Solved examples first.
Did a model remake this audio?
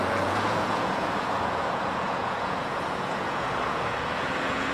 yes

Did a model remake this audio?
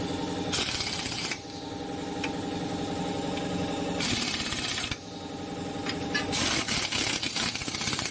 no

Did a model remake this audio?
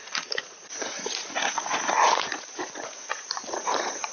yes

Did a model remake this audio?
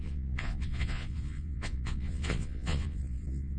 yes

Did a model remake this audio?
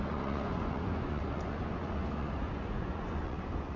yes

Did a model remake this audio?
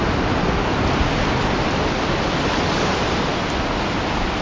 no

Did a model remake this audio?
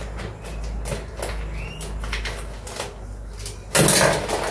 no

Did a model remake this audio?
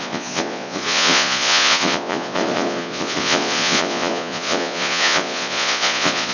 yes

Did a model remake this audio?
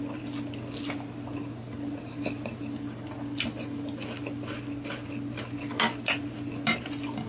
no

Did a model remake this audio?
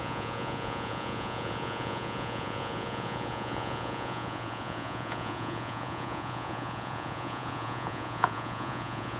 yes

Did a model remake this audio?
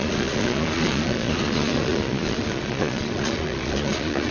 yes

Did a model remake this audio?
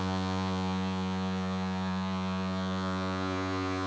yes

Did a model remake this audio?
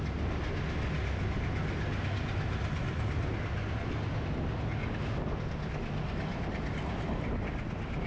no